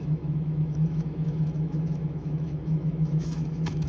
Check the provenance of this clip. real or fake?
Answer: fake